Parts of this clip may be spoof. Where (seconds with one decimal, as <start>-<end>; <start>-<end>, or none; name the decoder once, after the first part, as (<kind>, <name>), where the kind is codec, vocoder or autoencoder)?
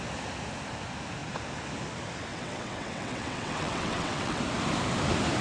2.3-4.4 (vocoder, WaveNeXt)